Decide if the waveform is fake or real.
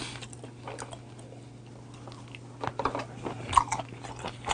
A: real